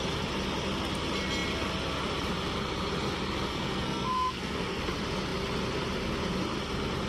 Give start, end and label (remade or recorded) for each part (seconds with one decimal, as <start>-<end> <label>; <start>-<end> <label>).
0.0-3.5 recorded; 3.5-4.8 remade; 4.8-7.1 recorded